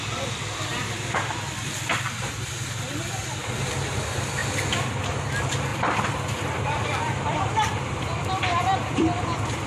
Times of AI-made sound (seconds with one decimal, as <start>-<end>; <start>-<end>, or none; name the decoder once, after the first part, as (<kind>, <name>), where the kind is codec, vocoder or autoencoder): 0.7-2.5 (vocoder, BigVGAN v2); 4.4-5.0; 5.7-9.2